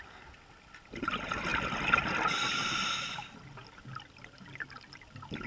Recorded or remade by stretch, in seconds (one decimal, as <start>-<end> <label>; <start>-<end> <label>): 0.0-5.5 recorded